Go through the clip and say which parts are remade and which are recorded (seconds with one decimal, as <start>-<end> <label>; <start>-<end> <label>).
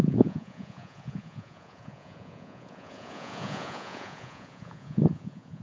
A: 0.0-5.6 remade